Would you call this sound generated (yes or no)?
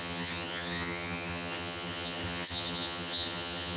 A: yes